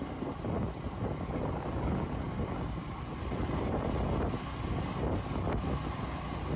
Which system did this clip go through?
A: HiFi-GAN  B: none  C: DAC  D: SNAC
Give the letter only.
B